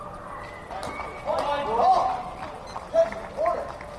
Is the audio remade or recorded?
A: recorded